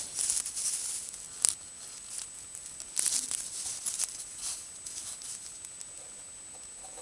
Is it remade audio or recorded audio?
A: recorded